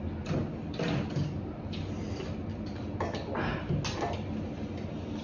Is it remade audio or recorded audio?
recorded